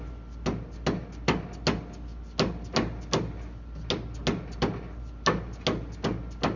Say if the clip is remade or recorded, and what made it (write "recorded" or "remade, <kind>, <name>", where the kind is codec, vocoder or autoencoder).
recorded